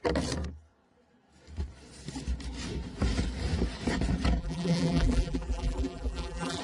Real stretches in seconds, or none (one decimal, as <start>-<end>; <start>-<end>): 0.0-4.4